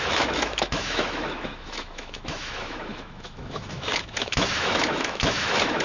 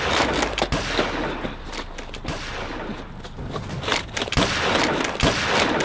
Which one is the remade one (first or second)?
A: first